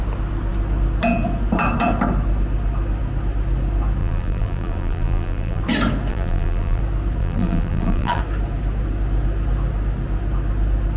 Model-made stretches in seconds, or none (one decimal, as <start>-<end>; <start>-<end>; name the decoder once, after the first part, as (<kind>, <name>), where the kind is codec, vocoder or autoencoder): 4.0-5.6 (vocoder, BigVGAN v2); 6.1-6.8; 7.2-8.2